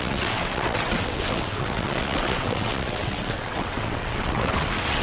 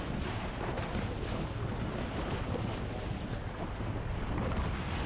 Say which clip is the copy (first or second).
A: first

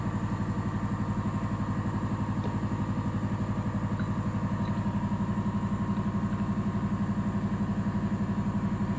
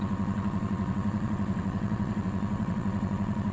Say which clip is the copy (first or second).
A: second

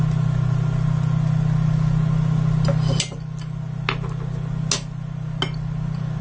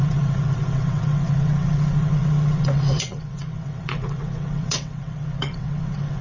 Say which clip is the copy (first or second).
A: second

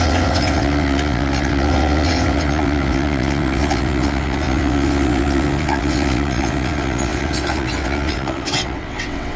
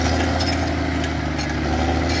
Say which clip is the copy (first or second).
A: first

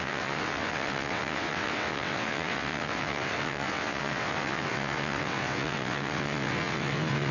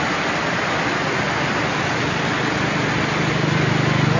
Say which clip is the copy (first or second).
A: first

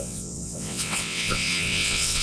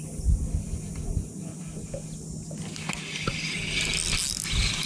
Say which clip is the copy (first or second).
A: first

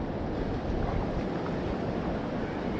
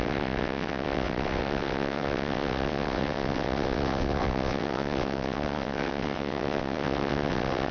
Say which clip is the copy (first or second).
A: second